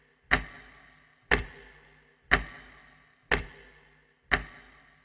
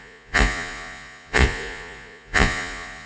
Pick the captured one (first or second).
first